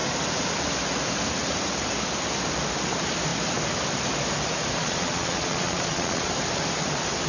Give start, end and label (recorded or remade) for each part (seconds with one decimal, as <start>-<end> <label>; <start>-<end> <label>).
0.0-4.8 recorded; 4.8-6.3 remade; 6.3-7.3 recorded